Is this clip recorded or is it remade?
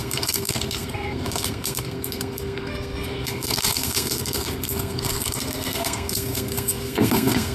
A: remade